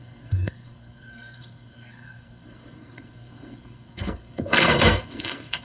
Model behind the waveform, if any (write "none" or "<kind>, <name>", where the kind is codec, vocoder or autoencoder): codec, SNAC